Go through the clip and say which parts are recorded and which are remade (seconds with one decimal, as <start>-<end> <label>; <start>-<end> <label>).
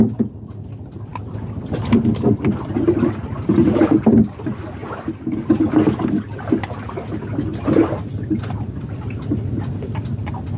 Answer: 0.0-10.6 recorded